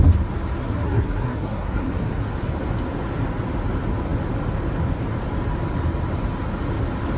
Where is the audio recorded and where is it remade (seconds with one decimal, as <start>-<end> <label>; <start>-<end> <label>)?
0.0-0.6 recorded; 0.6-2.2 remade; 2.2-7.2 recorded